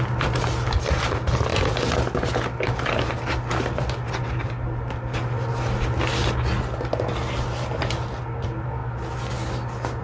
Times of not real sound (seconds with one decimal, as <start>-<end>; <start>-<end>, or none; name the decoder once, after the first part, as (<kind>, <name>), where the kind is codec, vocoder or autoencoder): none